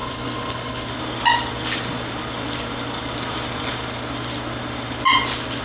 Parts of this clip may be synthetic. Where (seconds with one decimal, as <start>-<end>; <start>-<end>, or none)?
0.0-0.9